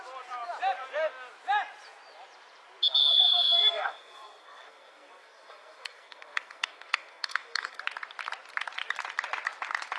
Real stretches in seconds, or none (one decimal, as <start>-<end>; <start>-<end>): 0.0-3.0; 7.8-10.0